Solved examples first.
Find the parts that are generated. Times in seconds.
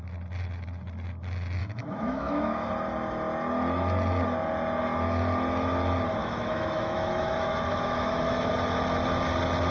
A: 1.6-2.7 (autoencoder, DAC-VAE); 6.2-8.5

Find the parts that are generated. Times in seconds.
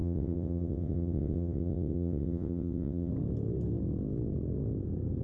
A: 0.0-3.1 (vocoder, WaveNeXt)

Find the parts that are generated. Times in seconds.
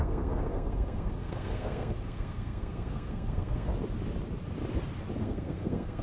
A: 0.0-3.7 (codec, SNAC); 5.2-6.0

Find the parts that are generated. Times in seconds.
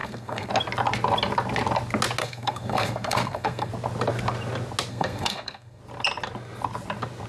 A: 0.0-0.5 (codec, SNAC); 2.2-3.7; 4.9-5.8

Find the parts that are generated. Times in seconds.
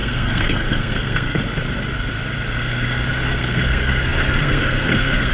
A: 0.0-1.4 (codec, SNAC); 3.1-5.3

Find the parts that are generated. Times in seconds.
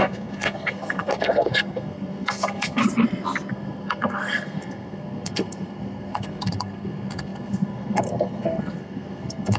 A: 0.0-2.8 (codec, SNAC); 3.5-9.6